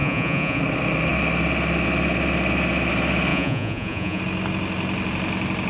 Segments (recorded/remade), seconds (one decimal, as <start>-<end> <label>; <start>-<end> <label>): 0.0-0.6 remade; 0.6-3.3 recorded; 3.3-4.2 remade; 4.2-5.7 recorded